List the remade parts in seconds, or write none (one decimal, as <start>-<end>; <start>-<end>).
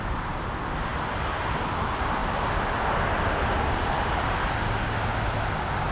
none